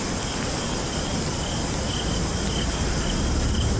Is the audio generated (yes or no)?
no